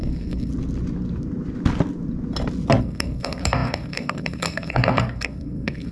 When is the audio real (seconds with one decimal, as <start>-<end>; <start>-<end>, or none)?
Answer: 0.5-2.8